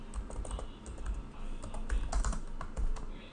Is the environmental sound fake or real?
real